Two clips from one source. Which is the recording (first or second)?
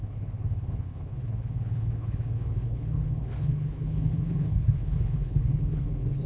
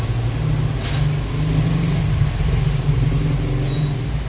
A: second